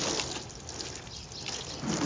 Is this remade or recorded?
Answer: recorded